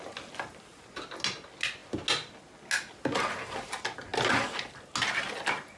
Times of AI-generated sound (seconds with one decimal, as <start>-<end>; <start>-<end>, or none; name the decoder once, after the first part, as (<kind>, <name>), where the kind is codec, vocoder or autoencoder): none